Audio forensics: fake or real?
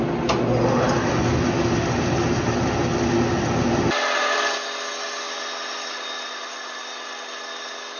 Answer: real